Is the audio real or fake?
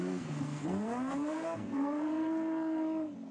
fake